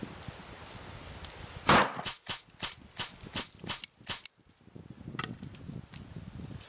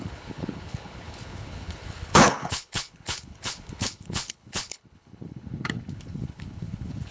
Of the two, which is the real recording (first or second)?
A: first